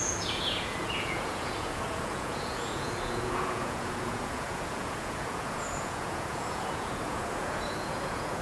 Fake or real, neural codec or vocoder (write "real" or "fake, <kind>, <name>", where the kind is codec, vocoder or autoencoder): fake, vocoder, Vocos